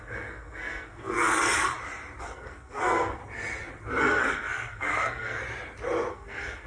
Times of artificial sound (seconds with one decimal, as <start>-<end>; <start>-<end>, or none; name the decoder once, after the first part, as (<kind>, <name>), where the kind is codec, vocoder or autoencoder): 0.0-1.7 (codec, SNAC); 2.2-3.2; 4.0-5.4; 6.1-6.7